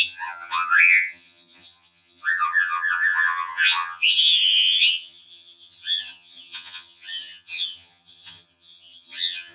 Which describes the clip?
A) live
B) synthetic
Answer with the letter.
B